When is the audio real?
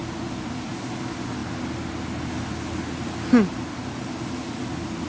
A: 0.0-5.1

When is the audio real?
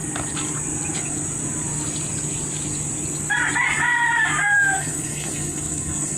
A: 0.0-4.4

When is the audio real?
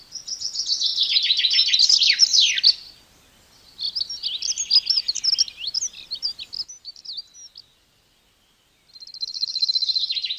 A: 0.0-10.4